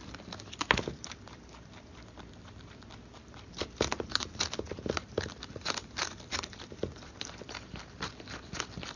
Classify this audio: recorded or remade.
remade